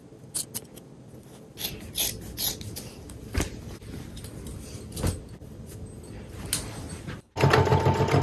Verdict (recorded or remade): recorded